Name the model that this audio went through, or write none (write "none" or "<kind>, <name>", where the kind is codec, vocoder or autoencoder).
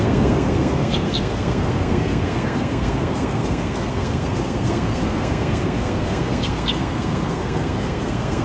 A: codec, SNAC